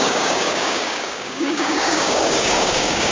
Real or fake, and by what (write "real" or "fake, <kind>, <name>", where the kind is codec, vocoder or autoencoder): fake, codec, DAC